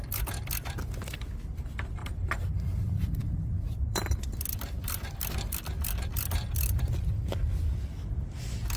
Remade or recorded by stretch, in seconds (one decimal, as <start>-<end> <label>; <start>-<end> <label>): 0.0-2.0 recorded; 2.0-6.8 remade; 6.8-8.8 recorded